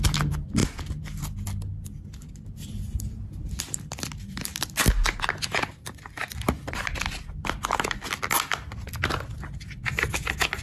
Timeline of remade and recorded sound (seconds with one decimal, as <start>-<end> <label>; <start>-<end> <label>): 0.0-10.6 recorded